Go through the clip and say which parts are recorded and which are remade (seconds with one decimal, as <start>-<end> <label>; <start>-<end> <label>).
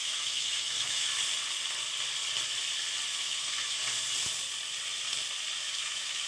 0.0-1.1 remade; 1.1-3.1 recorded; 3.1-3.8 remade; 3.8-5.7 recorded; 5.7-6.3 remade